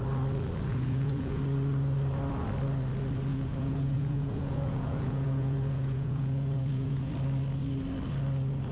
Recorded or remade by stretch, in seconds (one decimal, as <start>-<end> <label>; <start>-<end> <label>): 0.0-0.7 recorded; 0.7-1.4 remade; 1.4-3.3 recorded; 3.3-7.1 remade; 7.1-8.7 recorded